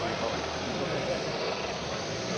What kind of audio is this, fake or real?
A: real